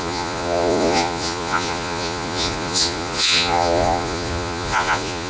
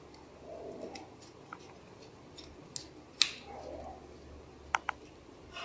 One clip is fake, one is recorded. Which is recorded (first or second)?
second